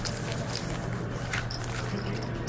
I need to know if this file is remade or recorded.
recorded